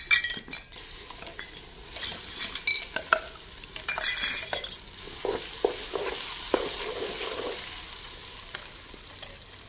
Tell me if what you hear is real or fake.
real